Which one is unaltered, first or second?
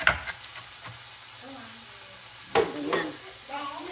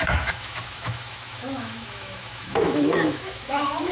first